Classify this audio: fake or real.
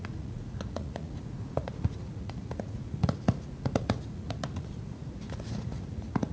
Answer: fake